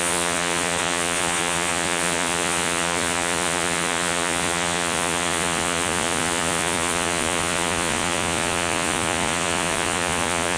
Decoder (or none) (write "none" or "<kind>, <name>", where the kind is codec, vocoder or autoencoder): vocoder, Vocos